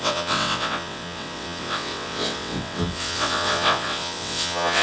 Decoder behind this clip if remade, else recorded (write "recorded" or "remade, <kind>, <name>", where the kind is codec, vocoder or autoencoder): remade, vocoder, WaveNeXt